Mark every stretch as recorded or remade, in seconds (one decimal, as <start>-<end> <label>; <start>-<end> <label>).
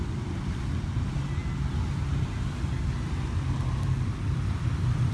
0.0-5.1 recorded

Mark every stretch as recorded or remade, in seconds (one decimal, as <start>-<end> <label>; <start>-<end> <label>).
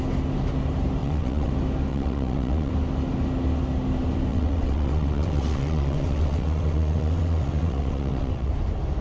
0.0-1.0 recorded; 1.0-1.5 remade; 1.5-1.9 recorded; 1.9-2.7 remade; 2.7-4.3 recorded; 4.3-8.5 remade; 8.5-9.0 recorded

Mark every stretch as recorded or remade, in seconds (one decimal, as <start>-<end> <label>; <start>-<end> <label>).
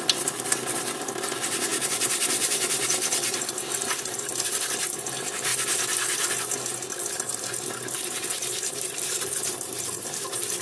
0.0-5.5 remade; 5.5-7.0 recorded; 7.0-10.6 remade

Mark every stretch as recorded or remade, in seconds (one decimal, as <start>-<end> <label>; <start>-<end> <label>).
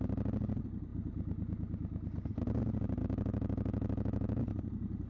0.0-3.0 recorded; 3.0-4.4 remade; 4.4-5.1 recorded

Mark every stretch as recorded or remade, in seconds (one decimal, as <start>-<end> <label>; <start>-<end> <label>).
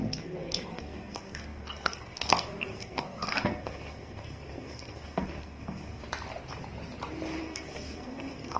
0.0-6.0 remade; 6.0-7.4 recorded; 7.4-8.6 remade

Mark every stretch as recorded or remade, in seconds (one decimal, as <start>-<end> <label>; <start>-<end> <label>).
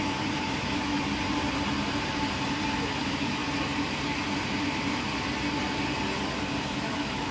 0.0-1.1 remade; 1.1-2.8 recorded; 2.8-3.4 remade; 3.4-6.6 recorded; 6.6-7.3 remade